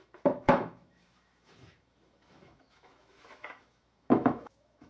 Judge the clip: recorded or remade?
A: remade